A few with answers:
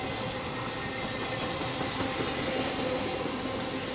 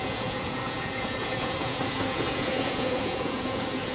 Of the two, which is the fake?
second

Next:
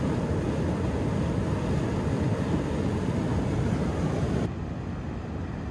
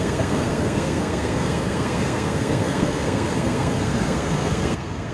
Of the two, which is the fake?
second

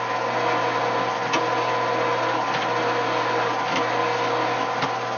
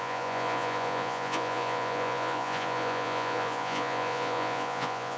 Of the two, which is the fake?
second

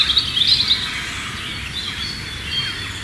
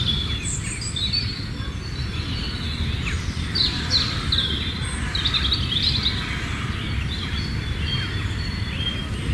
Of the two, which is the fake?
second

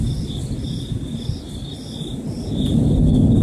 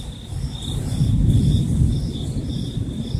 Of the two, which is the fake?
second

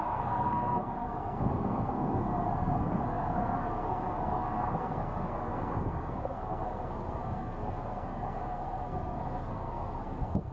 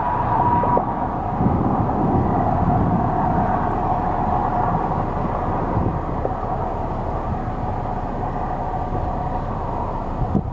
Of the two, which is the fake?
first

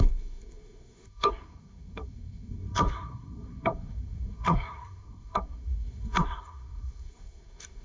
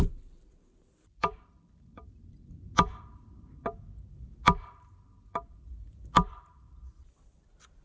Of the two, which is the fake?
first